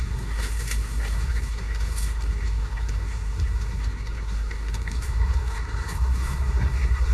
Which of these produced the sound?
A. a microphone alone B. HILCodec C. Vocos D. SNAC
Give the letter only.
D